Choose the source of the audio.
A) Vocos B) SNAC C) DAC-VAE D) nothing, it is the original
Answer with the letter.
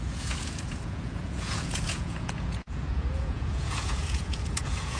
A